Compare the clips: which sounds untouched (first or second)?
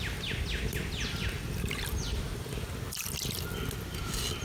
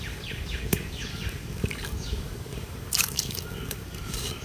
first